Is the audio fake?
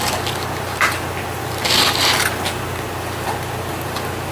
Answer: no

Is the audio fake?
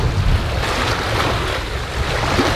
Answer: no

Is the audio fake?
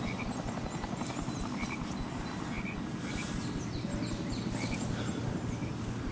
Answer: no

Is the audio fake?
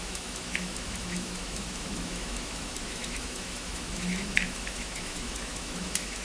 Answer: yes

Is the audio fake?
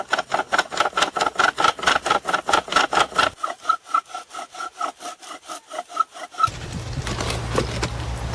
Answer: no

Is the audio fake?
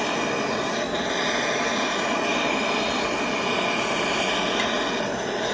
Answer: no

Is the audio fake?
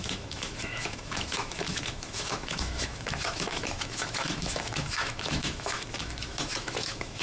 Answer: yes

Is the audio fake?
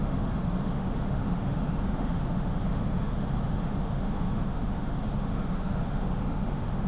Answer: yes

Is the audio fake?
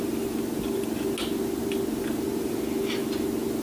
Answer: no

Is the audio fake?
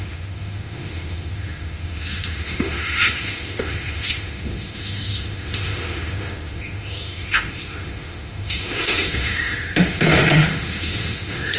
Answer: yes